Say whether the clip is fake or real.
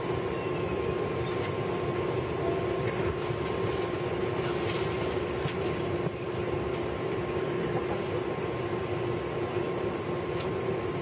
real